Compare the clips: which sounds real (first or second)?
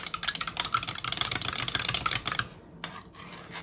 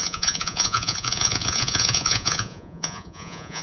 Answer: first